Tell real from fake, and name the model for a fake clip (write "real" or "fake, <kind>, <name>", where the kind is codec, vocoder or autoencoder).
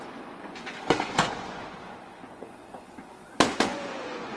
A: fake, vocoder, Vocos